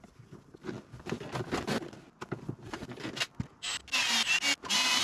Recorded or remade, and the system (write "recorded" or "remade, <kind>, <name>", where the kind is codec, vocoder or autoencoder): recorded